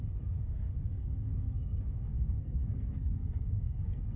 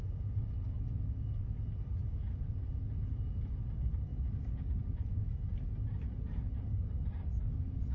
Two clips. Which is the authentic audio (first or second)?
second